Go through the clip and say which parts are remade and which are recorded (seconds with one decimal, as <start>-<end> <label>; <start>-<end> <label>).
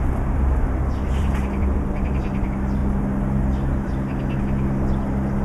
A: 0.0-2.8 remade; 2.8-4.4 recorded; 4.4-5.4 remade